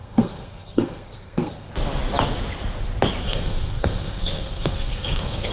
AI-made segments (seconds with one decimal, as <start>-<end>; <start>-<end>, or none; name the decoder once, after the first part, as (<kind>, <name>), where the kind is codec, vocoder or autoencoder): 0.0-1.7 (codec, SNAC); 3.2-5.5